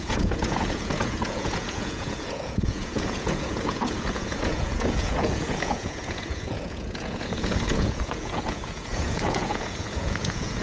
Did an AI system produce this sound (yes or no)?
yes